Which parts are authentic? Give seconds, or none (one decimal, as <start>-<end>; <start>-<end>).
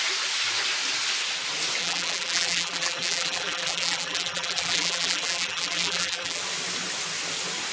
0.0-1.8; 6.4-7.7